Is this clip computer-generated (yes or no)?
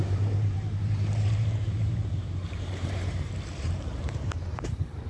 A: yes